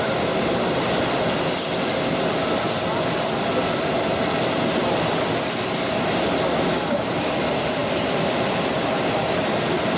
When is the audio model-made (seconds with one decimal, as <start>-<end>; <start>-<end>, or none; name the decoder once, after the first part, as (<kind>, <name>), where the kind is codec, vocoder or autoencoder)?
0.0-10.0 (vocoder, BigVGAN v2)